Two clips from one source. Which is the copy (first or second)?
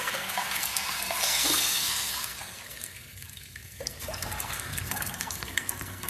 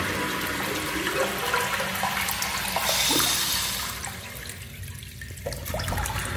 first